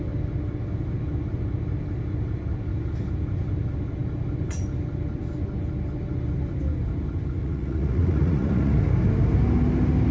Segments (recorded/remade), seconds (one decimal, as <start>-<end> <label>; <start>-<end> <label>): 0.0-7.4 recorded; 7.4-8.9 remade; 8.9-10.1 recorded